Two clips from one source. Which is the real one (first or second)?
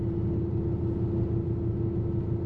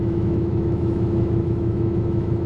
first